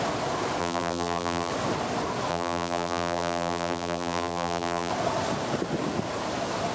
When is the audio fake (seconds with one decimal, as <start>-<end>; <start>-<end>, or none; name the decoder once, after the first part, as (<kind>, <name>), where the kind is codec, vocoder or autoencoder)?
0.6-1.5 (vocoder, BigVGAN v2); 2.3-4.9